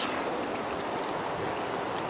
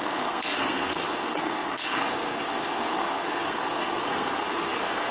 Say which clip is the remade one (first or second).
second